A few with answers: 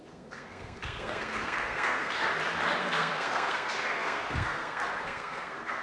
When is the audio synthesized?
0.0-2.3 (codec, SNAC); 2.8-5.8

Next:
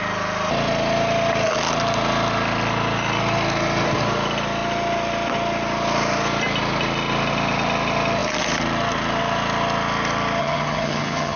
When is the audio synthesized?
10.4-11.4 (vocoder, HiFi-GAN)

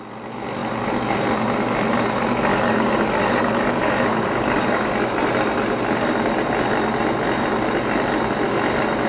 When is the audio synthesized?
2.5-4.9 (codec, DAC)